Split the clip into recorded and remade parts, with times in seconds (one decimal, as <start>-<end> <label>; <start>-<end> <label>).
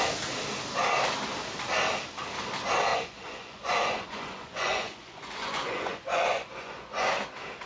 0.0-2.9 recorded; 2.9-7.1 remade; 7.1-7.7 recorded